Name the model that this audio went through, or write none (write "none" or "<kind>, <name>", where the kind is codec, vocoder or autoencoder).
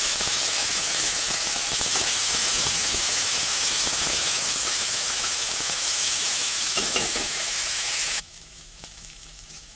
autoencoder, DAC-VAE